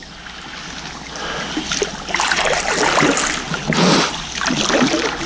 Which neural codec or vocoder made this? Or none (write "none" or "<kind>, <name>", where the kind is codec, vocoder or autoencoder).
none